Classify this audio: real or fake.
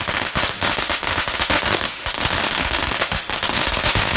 fake